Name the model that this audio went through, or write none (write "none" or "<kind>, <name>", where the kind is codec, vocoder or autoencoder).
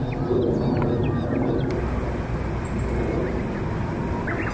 none